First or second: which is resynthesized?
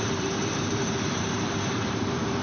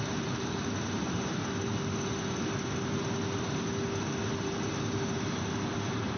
first